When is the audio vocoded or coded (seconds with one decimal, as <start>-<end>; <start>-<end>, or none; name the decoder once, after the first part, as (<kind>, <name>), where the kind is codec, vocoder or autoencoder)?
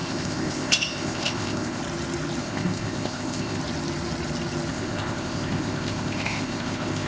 0.0-1.8 (codec, ZipCodec); 2.4-3.6; 4.7-7.1